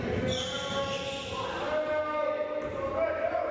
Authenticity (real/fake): real